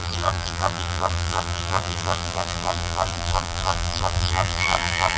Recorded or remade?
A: remade